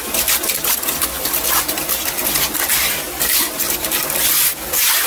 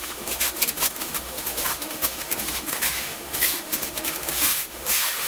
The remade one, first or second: second